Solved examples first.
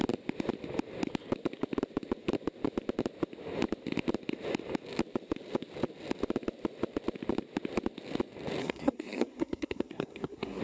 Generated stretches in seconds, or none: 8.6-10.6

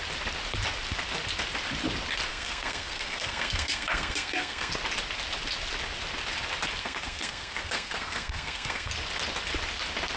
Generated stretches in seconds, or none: 2.3-4.7; 6.8-8.9

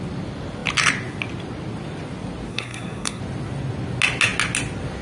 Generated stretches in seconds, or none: 2.5-3.2

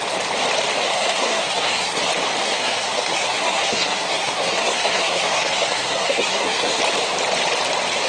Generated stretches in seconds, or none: 0.8-2.0; 2.4-6.8

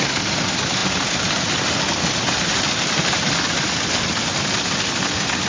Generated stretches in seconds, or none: none

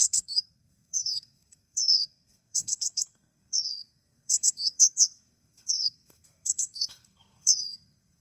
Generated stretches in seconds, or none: 0.0-8.2